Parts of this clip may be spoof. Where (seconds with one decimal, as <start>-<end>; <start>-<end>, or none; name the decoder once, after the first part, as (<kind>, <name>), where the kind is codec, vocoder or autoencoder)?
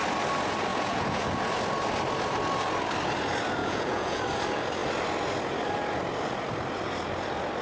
0.7-1.2 (vocoder, Vocos); 3.6-4.2